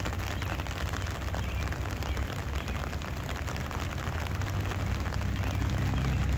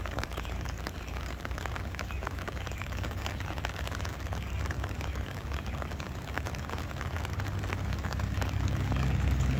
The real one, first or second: first